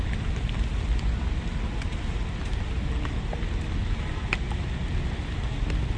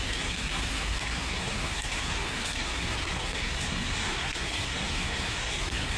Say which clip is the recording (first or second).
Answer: first